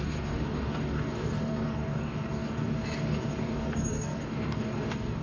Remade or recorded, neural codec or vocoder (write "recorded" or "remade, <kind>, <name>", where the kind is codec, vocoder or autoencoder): remade, codec, DAC